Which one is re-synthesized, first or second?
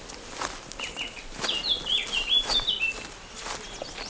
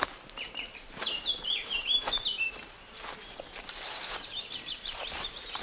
second